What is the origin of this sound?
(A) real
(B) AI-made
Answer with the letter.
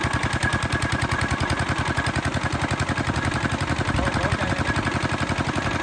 A